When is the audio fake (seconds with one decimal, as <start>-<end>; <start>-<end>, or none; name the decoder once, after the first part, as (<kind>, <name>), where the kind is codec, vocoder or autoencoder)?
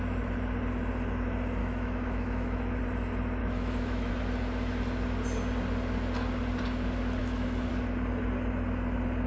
1.6-2.8 (autoencoder, DAC-VAE); 3.4-4.1; 7.2-7.7